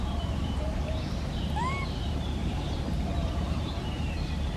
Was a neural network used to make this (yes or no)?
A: yes